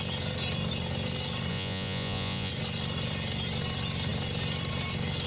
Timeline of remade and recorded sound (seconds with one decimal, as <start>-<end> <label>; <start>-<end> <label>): 0.0-1.5 recorded; 1.5-2.5 remade; 2.5-5.3 recorded